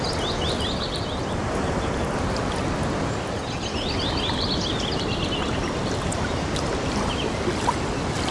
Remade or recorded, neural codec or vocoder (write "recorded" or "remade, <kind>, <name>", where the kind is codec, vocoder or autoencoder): recorded